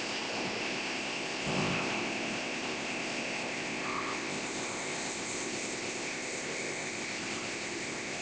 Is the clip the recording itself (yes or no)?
no